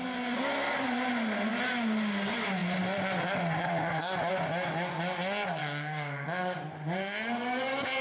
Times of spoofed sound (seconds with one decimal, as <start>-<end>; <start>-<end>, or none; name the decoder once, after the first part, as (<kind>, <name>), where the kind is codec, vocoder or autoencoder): 5.6-6.6 (codec, DAC)